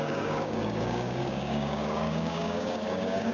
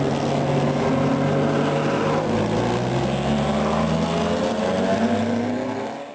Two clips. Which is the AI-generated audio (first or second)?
first